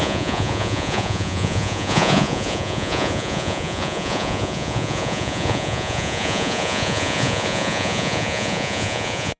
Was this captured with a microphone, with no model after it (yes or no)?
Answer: no